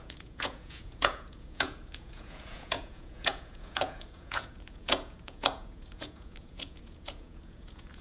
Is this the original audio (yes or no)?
no